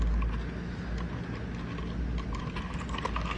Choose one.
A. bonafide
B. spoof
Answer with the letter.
A